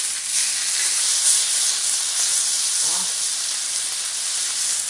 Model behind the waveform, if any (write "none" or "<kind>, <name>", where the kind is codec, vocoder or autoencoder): none